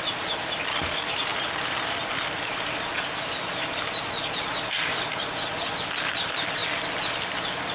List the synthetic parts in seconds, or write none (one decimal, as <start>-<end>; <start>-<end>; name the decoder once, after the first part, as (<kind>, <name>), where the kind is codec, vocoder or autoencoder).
none